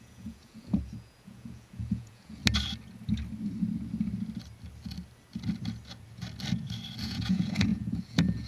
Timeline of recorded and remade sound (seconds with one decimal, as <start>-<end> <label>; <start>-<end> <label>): 0.0-2.4 remade; 2.4-7.0 recorded; 7.0-8.5 remade